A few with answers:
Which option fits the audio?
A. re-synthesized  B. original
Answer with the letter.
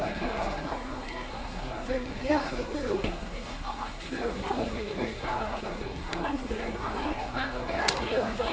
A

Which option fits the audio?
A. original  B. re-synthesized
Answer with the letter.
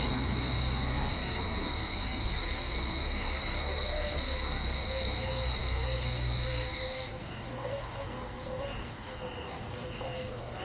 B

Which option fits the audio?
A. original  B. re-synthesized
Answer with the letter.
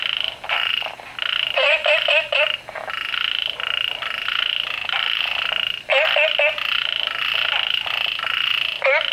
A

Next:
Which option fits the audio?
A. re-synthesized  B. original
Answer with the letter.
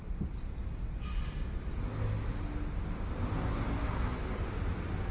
B